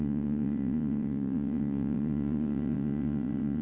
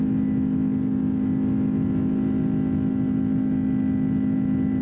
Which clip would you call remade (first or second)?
first